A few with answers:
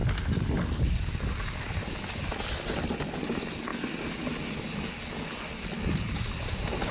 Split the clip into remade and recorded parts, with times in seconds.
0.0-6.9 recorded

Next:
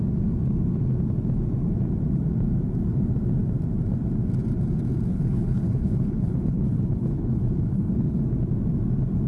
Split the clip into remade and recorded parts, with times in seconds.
0.0-5.1 recorded; 5.1-8.2 remade; 8.2-9.3 recorded

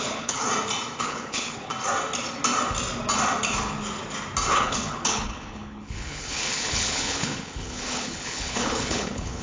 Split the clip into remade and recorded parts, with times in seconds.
0.0-0.4 remade; 0.4-1.0 recorded; 1.0-1.7 remade; 1.7-4.5 recorded; 4.5-9.4 remade

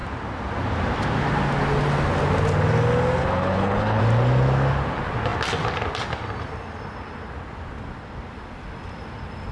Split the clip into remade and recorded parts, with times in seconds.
0.0-3.2 recorded; 3.2-4.0 remade; 4.0-9.5 recorded

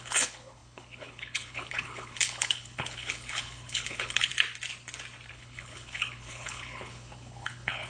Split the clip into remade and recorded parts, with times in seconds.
0.0-4.3 remade; 4.3-5.3 recorded; 5.3-7.9 remade